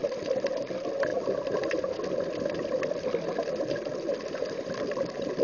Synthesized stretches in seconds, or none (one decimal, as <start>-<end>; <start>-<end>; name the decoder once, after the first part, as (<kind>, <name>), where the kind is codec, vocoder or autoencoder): 0.0-0.5 (vocoder, BigVGAN v2)